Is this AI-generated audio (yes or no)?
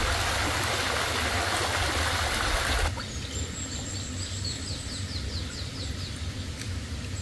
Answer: no